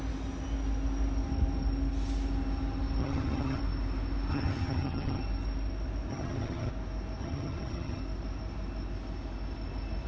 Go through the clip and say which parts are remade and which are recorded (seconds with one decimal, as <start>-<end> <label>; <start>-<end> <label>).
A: 0.0-3.0 recorded; 3.0-3.6 remade; 3.6-4.3 recorded; 4.3-5.2 remade; 5.2-6.1 recorded; 6.1-6.7 remade; 6.7-7.2 recorded; 7.2-8.0 remade; 8.0-10.1 recorded